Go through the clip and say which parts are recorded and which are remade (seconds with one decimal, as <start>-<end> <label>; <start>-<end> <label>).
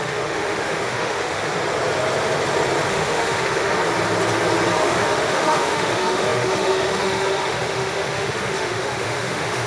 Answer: 0.0-1.4 remade; 1.4-2.9 recorded; 2.9-3.8 remade; 3.8-4.8 recorded; 4.8-9.7 remade